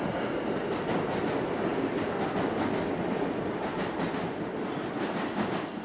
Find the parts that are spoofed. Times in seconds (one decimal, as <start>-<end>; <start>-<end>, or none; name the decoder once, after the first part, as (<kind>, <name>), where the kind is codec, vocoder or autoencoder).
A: none